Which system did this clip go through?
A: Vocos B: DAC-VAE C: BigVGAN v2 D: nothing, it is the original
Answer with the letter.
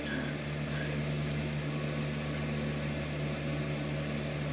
D